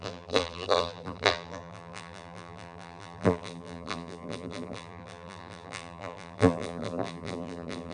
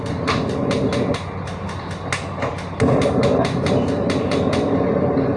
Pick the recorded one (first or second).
second